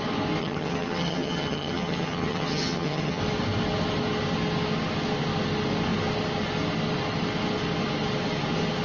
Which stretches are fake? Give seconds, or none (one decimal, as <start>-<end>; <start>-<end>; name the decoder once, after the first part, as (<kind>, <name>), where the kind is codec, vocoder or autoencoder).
0.4-3.2 (vocoder, HiFi-GAN)

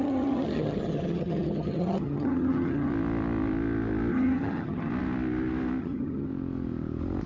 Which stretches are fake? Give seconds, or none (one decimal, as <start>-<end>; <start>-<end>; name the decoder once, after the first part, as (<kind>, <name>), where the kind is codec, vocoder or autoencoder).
0.0-2.9 (vocoder, HiFi-GAN); 4.1-4.9; 5.8-6.3

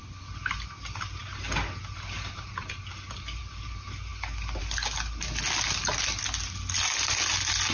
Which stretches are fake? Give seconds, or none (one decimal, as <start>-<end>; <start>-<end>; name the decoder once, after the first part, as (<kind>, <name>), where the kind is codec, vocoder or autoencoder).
none

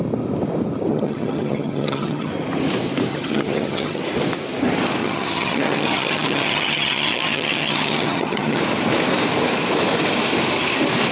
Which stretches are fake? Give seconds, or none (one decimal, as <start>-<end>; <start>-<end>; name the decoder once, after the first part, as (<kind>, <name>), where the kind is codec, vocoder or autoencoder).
0.9-2.3 (vocoder, HiFi-GAN); 3.1-4.0; 5.0-8.6

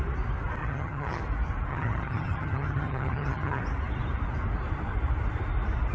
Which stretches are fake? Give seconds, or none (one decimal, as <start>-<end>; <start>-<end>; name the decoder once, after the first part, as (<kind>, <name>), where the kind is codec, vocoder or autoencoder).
0.6-1.2 (vocoder, HiFi-GAN); 1.7-3.6

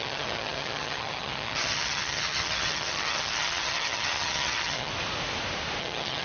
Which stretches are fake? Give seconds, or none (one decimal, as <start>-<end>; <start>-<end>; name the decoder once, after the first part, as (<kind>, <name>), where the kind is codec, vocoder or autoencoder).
0.0-4.9 (vocoder, HiFi-GAN); 5.8-6.2